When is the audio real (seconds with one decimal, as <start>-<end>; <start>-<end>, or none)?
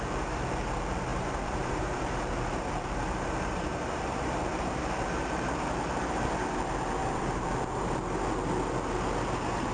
0.0-1.1; 5.0-7.0; 8.0-9.7